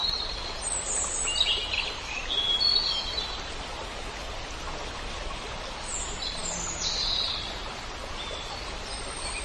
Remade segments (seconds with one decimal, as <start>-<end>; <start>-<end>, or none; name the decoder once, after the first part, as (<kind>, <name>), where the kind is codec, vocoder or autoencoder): none